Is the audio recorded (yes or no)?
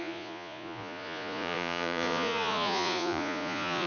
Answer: no